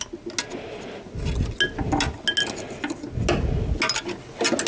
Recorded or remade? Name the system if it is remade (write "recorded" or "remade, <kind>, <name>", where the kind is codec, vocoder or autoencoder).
recorded